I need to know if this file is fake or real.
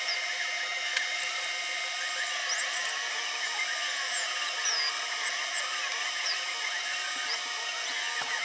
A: real